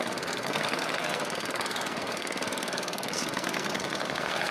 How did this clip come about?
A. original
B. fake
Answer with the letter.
B